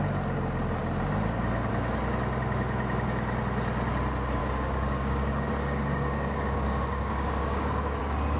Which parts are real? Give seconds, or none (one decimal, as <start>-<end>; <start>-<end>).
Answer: 0.0-4.4; 8.0-8.4